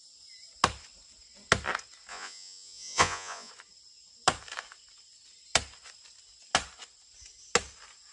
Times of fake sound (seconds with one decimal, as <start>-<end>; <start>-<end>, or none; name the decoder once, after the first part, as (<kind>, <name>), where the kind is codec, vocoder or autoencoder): 2.1-3.5 (vocoder, Vocos)